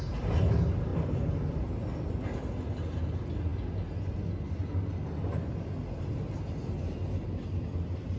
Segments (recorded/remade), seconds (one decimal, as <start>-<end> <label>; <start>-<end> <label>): 0.0-8.2 recorded